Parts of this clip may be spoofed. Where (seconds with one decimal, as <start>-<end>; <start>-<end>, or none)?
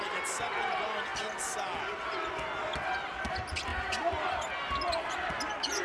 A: none